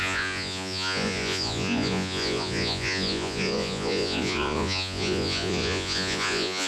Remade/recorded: remade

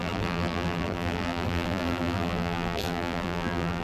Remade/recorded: remade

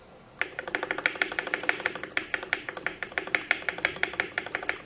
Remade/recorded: recorded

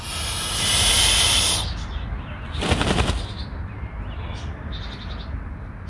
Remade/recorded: recorded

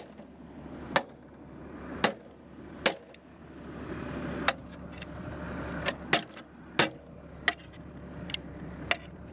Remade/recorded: recorded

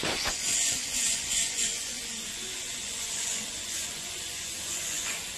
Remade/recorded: remade